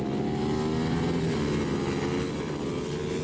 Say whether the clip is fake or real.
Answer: real